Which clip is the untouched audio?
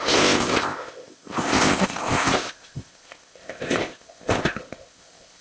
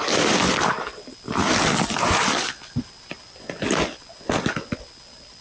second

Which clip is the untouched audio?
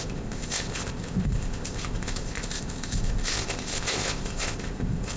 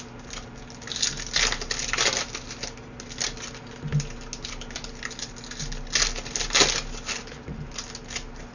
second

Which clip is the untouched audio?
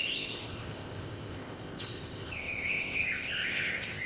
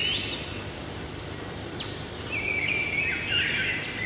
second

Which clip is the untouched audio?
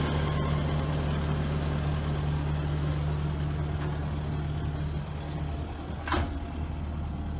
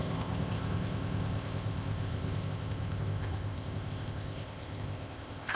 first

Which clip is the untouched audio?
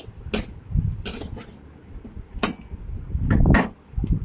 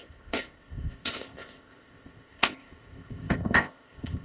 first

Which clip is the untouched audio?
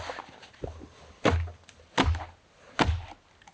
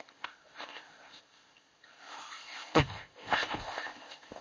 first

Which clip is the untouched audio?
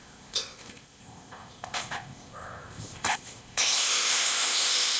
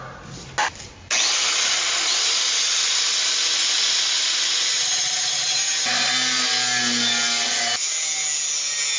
second